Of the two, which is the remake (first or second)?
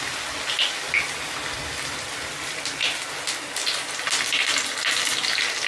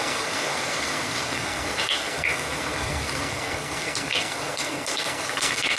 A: second